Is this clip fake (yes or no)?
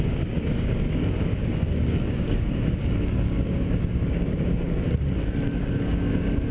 yes